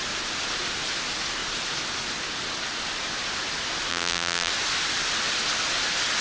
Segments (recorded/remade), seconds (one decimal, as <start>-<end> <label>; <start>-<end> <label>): 0.0-3.9 recorded; 3.9-4.5 remade; 4.5-6.2 recorded